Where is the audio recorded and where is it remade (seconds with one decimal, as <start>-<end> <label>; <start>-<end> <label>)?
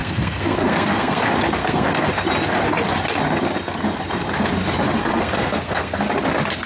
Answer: 0.0-1.2 remade; 1.2-1.6 recorded; 1.6-2.1 remade; 2.1-5.0 recorded; 5.0-6.0 remade; 6.0-6.7 recorded